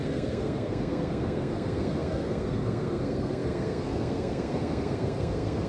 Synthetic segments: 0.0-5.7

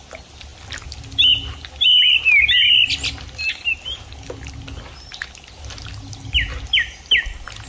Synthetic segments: none